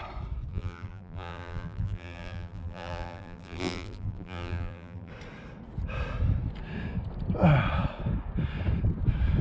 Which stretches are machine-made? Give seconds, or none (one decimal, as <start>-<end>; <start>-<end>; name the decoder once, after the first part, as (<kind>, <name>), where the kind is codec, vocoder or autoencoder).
0.5-5.1 (vocoder, BigVGAN v2)

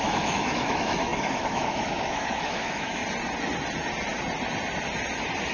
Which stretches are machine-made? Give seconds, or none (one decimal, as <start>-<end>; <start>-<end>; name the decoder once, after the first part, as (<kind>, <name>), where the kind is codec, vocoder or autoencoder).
0.0-3.0 (autoencoder, DAC-VAE)

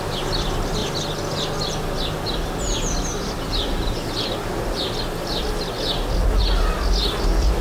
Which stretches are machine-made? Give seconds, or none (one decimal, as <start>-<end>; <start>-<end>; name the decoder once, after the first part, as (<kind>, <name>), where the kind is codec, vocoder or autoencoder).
0.8-5.4 (vocoder, BigVGAN v2)

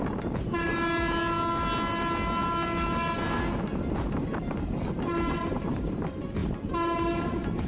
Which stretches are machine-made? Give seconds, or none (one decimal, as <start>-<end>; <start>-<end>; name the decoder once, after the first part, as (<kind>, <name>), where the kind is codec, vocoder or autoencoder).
0.0-0.7 (vocoder, BigVGAN v2); 5.3-7.7

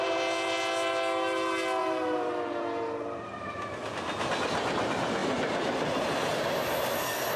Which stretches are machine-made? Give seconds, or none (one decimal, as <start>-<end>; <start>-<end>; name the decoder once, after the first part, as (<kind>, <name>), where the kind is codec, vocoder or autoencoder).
1.8-3.2 (vocoder, BigVGAN v2); 5.2-6.6

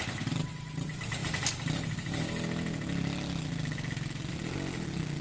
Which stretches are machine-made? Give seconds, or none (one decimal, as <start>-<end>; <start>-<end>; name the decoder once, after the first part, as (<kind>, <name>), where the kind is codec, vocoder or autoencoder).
none